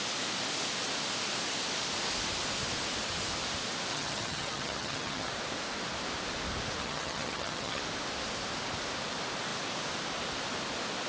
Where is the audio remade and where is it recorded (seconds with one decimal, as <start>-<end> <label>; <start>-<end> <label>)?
0.0-3.9 recorded; 3.9-5.3 remade; 5.3-6.8 recorded; 6.8-7.8 remade; 7.8-11.1 recorded